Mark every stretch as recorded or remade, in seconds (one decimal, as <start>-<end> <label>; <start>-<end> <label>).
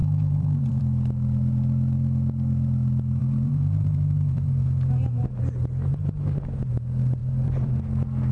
0.0-0.8 remade; 0.8-3.2 recorded; 3.2-5.4 remade; 5.4-5.9 recorded; 5.9-6.7 remade; 6.7-7.2 recorded; 7.2-7.8 remade; 7.8-8.3 recorded